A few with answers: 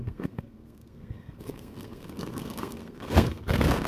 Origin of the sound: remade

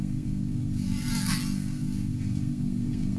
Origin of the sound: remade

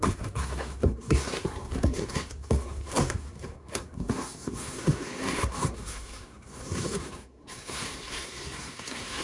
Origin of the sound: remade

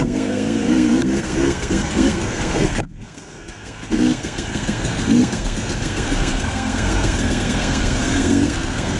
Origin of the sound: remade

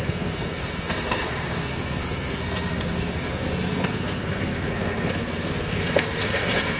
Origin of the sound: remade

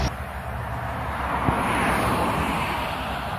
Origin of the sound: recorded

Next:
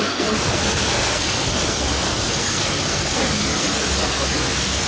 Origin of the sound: remade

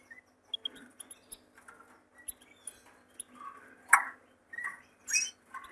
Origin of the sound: recorded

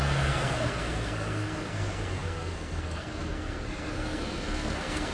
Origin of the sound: remade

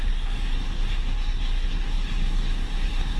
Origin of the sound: remade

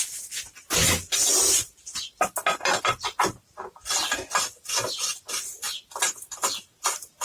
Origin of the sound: recorded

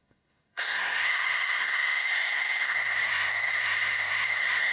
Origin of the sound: remade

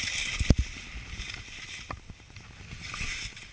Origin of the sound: recorded